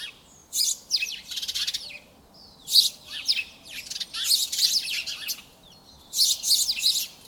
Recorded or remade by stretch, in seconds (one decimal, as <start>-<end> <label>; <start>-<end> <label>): 0.0-4.4 recorded; 4.4-4.9 remade; 4.9-7.3 recorded